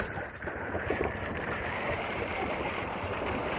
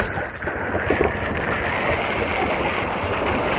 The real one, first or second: second